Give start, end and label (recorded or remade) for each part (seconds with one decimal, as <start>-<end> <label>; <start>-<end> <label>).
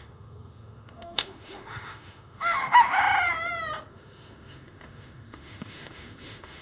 0.0-3.0 remade; 3.0-3.9 recorded; 3.9-6.6 remade